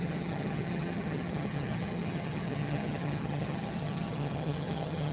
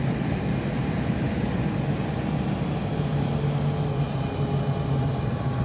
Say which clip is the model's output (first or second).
first